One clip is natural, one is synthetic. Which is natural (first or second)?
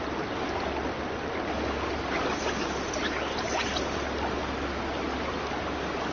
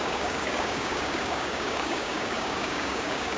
first